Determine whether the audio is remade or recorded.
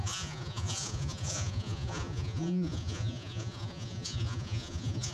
remade